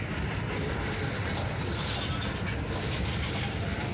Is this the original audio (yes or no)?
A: yes